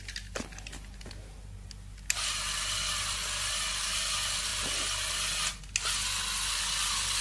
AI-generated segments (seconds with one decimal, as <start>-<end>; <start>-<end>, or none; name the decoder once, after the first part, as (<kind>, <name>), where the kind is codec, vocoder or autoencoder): none